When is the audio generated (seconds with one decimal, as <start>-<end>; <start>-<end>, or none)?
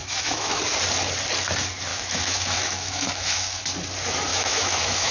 0.0-0.6; 1.9-3.6; 4.3-5.1